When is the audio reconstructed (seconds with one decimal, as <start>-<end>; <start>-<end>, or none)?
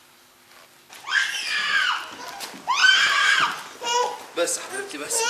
2.8-3.3